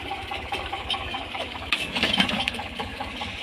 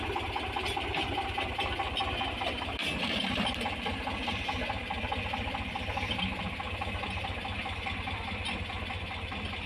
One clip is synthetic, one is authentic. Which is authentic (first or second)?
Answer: second